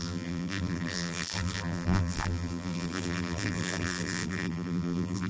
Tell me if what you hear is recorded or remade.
remade